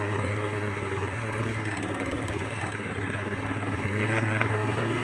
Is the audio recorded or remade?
remade